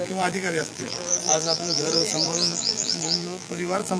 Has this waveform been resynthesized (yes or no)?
yes